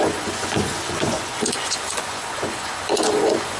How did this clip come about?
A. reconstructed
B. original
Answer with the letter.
A